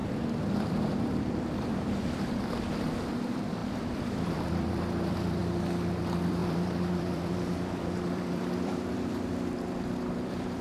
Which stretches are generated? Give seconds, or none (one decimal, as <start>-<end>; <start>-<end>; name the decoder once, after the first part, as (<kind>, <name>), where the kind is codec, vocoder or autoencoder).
0.5-5.4 (vocoder, BigVGAN v2); 5.9-10.6